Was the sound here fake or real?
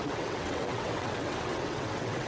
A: fake